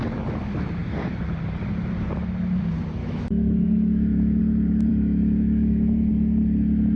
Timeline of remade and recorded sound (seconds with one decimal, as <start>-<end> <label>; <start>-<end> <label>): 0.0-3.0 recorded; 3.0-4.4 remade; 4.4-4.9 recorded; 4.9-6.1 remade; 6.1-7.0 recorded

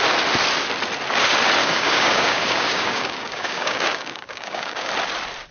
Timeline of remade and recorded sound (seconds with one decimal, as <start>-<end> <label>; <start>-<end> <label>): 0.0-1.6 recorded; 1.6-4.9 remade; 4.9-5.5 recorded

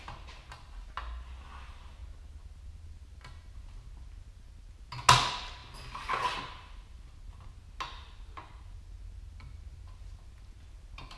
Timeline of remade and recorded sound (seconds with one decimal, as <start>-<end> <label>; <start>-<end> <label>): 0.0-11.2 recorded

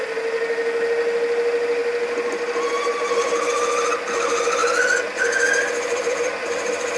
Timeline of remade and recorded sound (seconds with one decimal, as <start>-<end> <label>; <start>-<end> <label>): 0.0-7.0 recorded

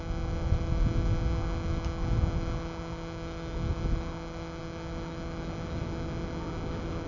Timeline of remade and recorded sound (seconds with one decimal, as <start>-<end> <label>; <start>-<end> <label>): 0.0-7.1 recorded

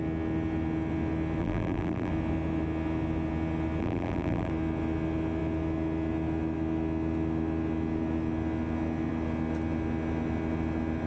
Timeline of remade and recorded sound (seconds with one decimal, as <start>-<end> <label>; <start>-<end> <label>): 0.0-1.4 recorded; 1.4-2.1 remade; 2.1-3.8 recorded; 3.8-4.5 remade; 4.5-11.1 recorded